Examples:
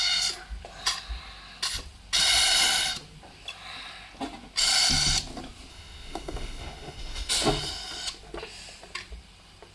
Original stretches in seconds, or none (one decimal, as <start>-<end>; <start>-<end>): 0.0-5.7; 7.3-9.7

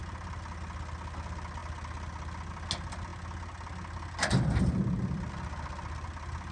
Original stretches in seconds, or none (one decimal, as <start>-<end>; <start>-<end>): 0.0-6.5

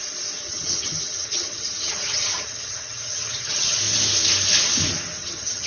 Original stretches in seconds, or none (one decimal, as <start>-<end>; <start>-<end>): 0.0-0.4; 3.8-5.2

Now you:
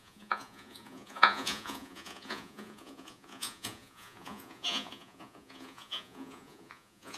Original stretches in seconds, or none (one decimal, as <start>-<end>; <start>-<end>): none

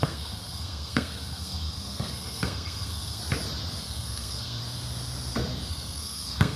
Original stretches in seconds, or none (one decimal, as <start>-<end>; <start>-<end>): 3.2-3.8; 4.6-5.7

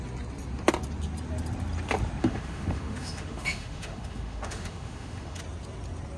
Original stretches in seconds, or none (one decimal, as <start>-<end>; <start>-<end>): 0.0-2.2; 5.4-6.2

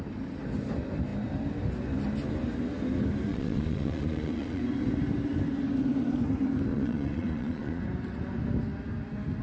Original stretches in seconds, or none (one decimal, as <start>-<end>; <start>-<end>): 0.0-3.3; 4.6-6.7; 7.8-9.4